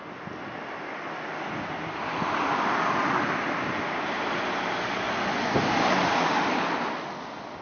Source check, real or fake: real